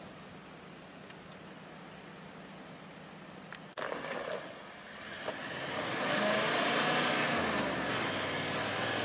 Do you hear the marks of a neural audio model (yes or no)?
no